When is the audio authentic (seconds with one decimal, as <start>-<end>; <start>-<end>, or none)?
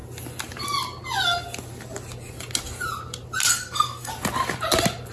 0.0-3.5; 4.1-5.1